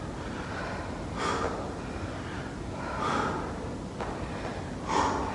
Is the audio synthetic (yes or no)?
no